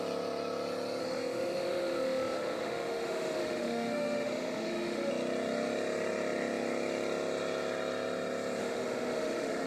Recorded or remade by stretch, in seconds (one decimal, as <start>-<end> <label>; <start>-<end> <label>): 0.0-1.0 recorded; 1.0-5.1 remade; 5.1-8.6 recorded; 8.6-9.7 remade